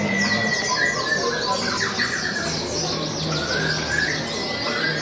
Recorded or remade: recorded